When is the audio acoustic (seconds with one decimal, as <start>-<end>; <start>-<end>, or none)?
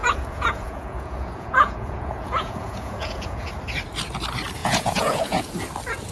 3.5-4.6; 5.4-6.1